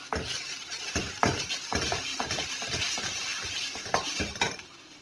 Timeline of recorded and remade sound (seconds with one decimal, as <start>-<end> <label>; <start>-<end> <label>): 0.0-1.0 recorded; 1.0-1.5 remade; 1.5-2.1 recorded; 2.1-2.8 remade; 2.8-5.0 recorded